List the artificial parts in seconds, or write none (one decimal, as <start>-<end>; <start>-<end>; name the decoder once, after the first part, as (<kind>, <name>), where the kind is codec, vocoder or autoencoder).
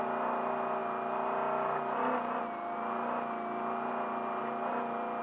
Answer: none